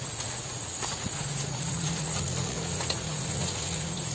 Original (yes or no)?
no